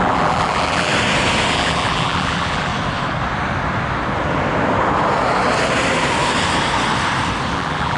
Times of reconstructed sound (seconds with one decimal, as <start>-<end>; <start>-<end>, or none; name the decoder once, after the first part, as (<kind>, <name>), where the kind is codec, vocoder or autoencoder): 0.0-0.9 (vocoder, BigVGAN v2); 1.5-2.7; 7.5-8.0